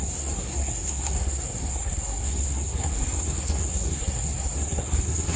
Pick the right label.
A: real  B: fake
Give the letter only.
B